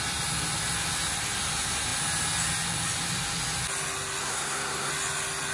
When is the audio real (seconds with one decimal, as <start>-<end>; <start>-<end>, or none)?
0.0-4.2; 4.9-5.5